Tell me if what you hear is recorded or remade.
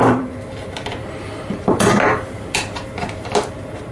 remade